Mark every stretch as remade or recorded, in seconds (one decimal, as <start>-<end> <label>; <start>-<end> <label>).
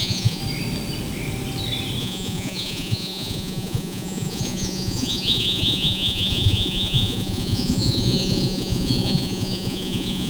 0.0-0.4 remade; 0.4-2.0 recorded; 2.0-10.3 remade